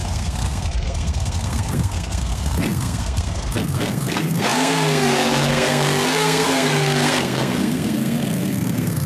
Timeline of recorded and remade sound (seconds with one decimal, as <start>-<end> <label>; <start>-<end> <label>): 0.0-9.1 remade